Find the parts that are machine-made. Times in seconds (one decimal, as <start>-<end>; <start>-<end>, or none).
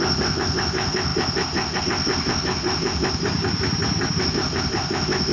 0.0-3.2; 4.2-5.3